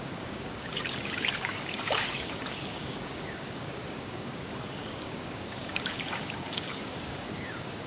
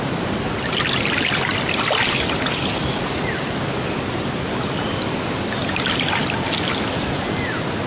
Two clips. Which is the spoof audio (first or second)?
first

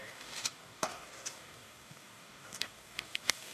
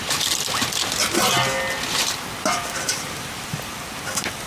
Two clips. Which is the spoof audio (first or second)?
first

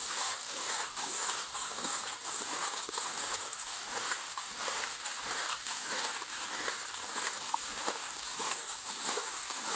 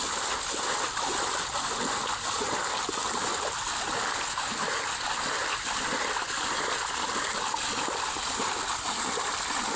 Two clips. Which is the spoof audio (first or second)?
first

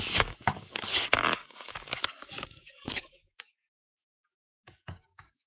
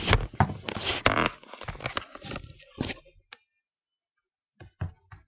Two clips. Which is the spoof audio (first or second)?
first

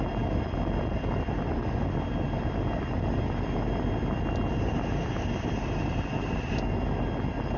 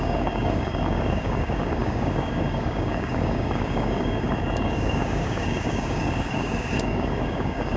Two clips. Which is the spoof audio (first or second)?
second